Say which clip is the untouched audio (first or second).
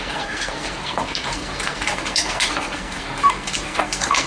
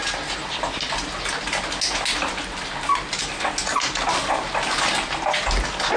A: second